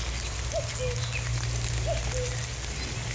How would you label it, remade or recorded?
recorded